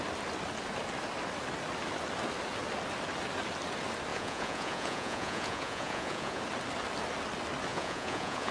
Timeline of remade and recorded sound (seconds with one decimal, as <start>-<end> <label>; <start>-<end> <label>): 0.0-4.1 recorded; 4.1-6.4 remade; 6.4-7.7 recorded; 7.7-8.5 remade